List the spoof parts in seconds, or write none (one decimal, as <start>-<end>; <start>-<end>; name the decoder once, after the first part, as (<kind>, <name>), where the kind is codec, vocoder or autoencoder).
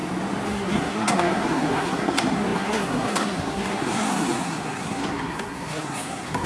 0.5-6.5 (codec, SNAC)